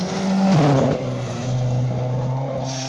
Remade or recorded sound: recorded